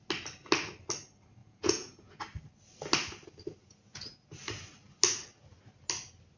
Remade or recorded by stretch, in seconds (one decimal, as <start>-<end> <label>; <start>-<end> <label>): 0.0-1.4 recorded; 1.4-2.2 remade; 2.2-3.6 recorded; 3.6-4.4 remade; 4.4-6.4 recorded